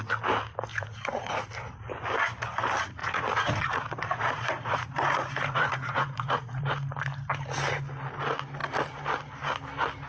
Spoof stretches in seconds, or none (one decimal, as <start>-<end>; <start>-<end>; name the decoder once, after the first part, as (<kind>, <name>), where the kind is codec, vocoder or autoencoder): 0.7-1.4 (vocoder, Vocos); 3.0-6.6